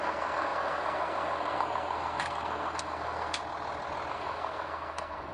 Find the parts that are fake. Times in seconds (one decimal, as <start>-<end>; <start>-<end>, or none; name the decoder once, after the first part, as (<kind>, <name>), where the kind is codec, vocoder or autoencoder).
0.0-3.4 (codec, SNAC); 4.1-5.3